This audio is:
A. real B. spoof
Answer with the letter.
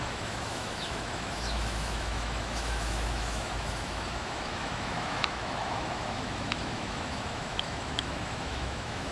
B